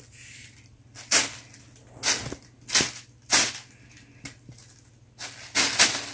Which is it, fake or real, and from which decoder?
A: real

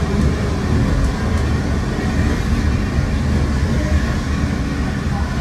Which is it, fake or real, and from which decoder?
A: real